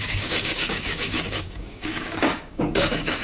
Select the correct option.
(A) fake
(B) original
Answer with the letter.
A